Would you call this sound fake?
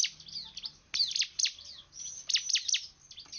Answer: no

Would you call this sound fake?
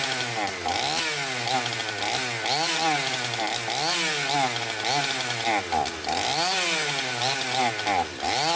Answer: no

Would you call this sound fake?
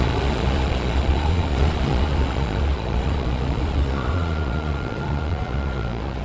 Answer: yes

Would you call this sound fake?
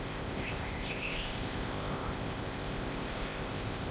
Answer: yes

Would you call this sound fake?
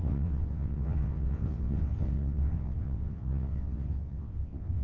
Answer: yes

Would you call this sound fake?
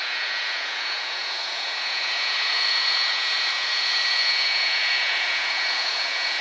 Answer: yes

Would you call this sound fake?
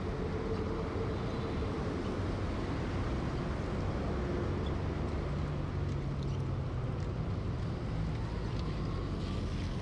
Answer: no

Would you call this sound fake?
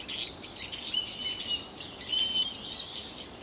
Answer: no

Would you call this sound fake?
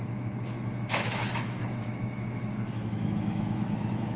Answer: yes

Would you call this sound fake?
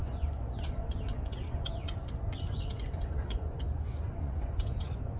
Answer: yes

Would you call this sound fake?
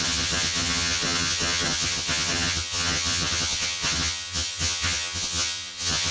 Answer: yes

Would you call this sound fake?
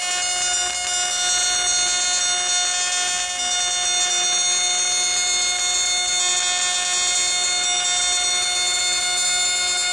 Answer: no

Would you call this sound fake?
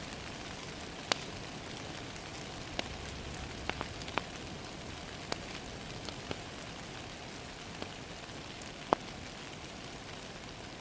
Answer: no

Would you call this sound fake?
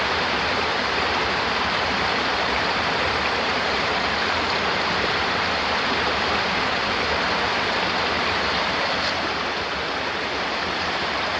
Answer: yes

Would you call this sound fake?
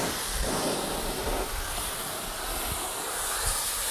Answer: no